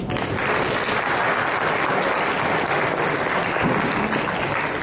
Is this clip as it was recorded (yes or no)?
yes